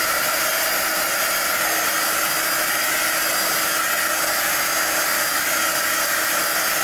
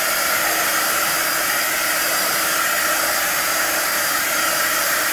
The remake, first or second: second